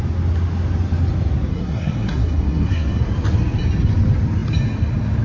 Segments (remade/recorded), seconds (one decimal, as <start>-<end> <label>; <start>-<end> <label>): 0.0-1.5 recorded; 1.5-2.9 remade; 2.9-5.2 recorded